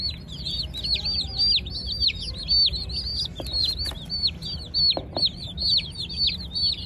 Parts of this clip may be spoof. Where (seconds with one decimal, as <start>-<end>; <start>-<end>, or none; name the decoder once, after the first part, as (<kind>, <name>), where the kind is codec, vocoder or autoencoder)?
none